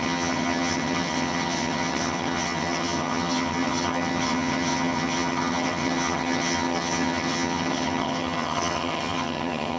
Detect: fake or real fake